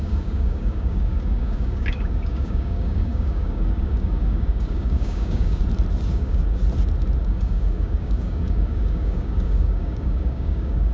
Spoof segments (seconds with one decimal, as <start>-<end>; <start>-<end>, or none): 0.0-5.6; 6.1-6.6; 7.2-10.9